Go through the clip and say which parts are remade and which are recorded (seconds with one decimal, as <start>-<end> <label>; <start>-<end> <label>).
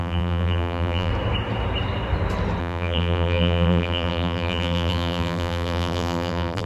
0.0-1.1 remade; 1.1-2.6 recorded; 2.6-6.7 remade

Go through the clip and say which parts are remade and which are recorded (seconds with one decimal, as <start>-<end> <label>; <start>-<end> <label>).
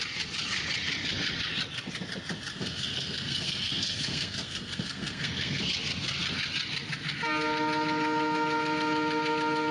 0.0-2.5 recorded; 2.5-5.6 remade; 5.6-9.7 recorded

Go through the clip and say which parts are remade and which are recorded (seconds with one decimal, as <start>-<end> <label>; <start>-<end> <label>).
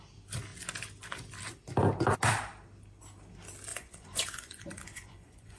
0.0-3.7 recorded; 3.7-5.6 remade